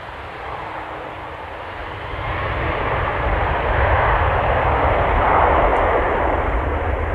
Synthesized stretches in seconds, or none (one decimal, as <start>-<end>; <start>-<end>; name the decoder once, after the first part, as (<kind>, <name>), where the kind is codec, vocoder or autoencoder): 1.8-4.2 (vocoder, BigVGAN v2); 5.7-7.1